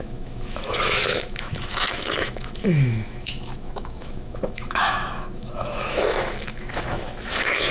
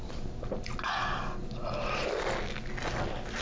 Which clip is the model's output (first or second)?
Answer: first